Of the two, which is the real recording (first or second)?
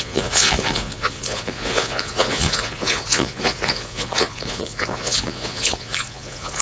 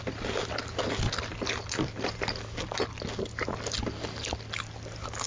second